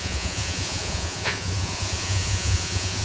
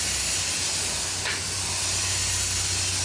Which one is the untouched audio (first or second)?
second